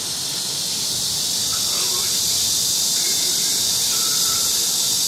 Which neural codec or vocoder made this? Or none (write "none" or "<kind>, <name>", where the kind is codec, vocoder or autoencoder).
none